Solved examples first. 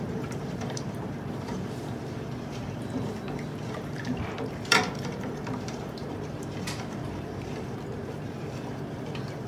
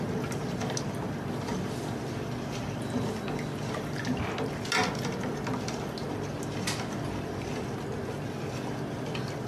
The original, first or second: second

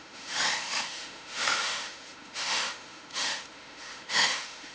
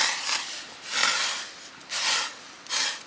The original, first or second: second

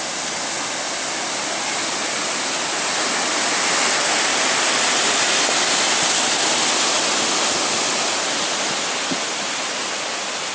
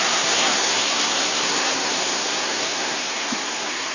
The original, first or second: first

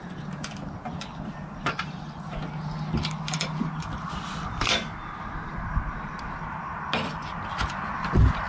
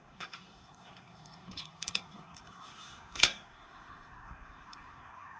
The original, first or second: first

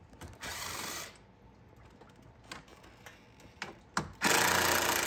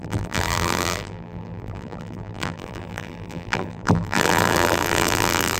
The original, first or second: first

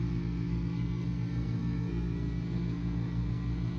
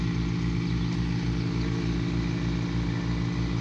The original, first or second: second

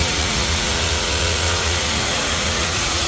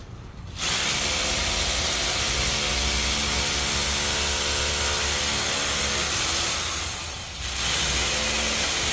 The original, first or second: second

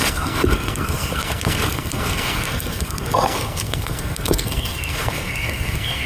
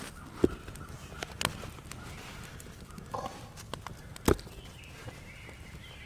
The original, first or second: second